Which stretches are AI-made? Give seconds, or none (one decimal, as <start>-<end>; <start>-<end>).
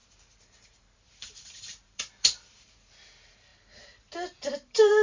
0.0-3.5; 4.5-5.0